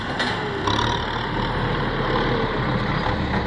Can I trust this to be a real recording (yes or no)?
yes